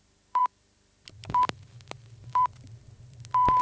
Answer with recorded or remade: remade